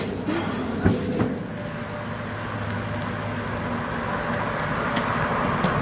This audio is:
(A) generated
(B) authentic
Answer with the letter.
B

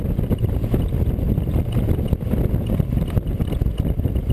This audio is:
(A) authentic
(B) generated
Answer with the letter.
A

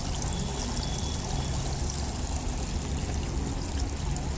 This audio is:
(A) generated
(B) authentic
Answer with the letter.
B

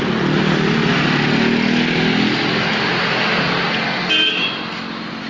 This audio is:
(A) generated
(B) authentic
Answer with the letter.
B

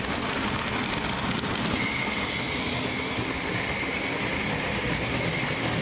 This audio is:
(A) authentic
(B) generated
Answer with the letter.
A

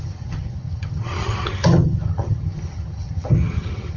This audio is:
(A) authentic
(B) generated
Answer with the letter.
B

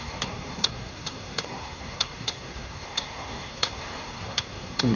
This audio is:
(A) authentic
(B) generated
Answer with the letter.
B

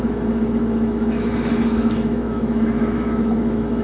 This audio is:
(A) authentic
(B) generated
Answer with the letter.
B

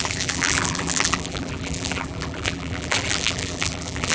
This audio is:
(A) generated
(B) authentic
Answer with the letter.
A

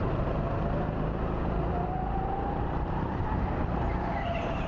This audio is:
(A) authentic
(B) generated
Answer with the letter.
B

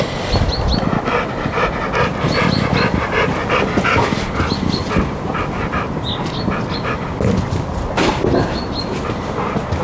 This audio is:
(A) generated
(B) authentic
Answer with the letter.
B